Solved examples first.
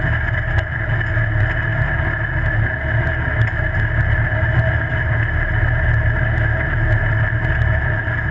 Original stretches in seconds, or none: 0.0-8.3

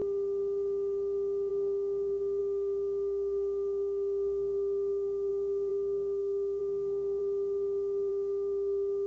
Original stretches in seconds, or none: 0.0-1.5; 7.2-8.1

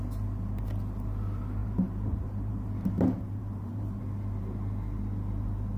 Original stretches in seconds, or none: 0.0-1.6; 2.7-3.4; 4.0-5.8

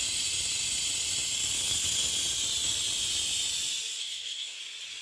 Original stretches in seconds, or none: 0.0-4.0; 4.6-5.0

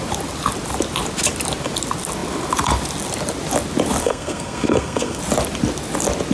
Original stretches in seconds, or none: 0.0-4.0; 5.2-6.3

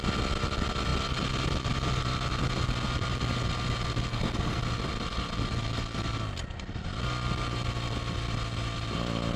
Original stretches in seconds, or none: 0.0-4.1; 4.6-9.4

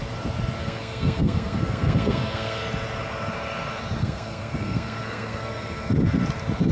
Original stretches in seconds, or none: 0.0-0.6; 2.6-4.0; 5.9-6.7